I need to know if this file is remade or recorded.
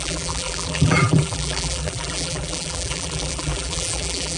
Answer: remade